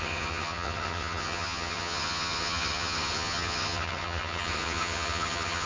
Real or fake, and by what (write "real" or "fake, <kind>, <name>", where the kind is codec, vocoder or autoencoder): fake, vocoder, HiFi-GAN